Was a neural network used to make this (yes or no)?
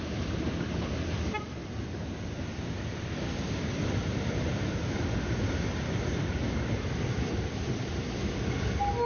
no